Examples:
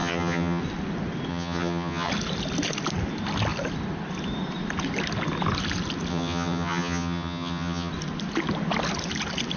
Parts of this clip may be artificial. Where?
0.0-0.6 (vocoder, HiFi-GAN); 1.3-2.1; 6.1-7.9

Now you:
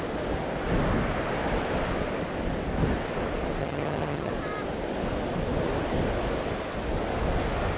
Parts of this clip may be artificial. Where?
3.6-4.3 (vocoder, HiFi-GAN)

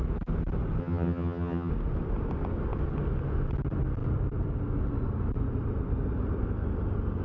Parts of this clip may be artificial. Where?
0.8-1.7 (vocoder, HiFi-GAN)

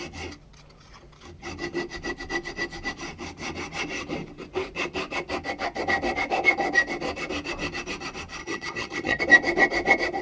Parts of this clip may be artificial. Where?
8.4-9.2 (vocoder, HiFi-GAN)

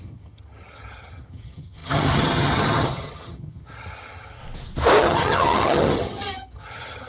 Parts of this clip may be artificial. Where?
0.0-4.4 (vocoder, HiFi-GAN); 5.0-7.1

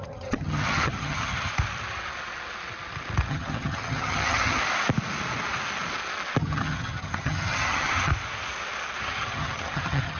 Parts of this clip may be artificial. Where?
0.0-1.5 (vocoder, HiFi-GAN); 3.3-4.6; 6.4-8.1; 9.0-10.2

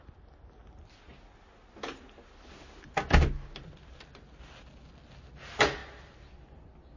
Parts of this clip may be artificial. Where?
none

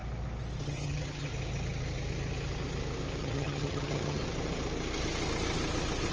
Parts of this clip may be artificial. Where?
0.6-1.3 (vocoder, HiFi-GAN); 3.2-4.2